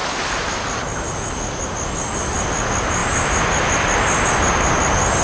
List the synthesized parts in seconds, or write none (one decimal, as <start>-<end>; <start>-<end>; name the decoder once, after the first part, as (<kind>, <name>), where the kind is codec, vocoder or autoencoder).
none